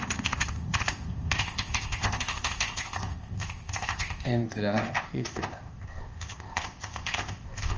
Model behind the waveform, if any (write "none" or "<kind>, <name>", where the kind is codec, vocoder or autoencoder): codec, ZipCodec